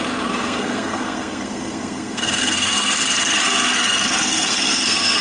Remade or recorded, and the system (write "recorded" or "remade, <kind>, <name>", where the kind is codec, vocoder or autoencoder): remade, codec, SNAC